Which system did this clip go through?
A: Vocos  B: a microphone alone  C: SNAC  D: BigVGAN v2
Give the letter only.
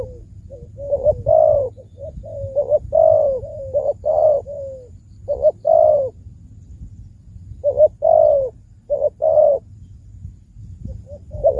B